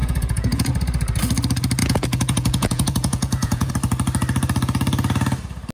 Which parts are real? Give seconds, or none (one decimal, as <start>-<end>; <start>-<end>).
0.7-1.8; 3.7-5.7